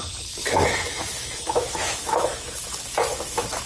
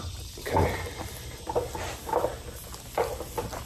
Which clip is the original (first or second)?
second